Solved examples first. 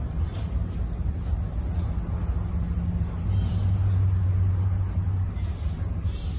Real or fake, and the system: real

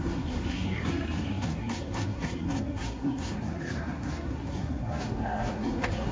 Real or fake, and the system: fake, codec, SNAC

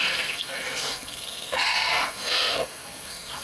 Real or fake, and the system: fake, codec, SNAC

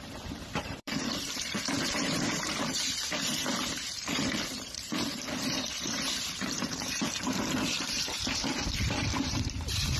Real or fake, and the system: fake, vocoder, BigVGAN v2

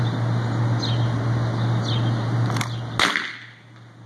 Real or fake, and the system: real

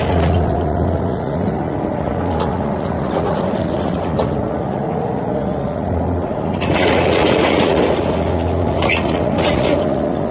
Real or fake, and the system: fake, vocoder, Vocos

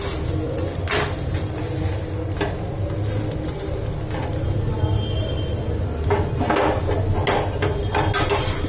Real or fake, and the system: real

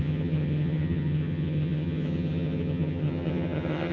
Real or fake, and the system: fake, vocoder, HiFi-GAN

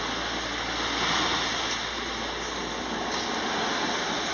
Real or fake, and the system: real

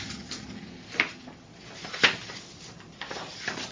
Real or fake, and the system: real